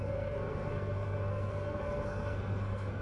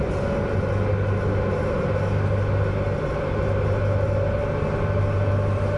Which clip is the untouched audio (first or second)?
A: second